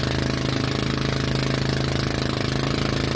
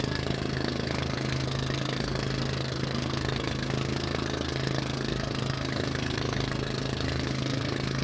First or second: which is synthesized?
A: second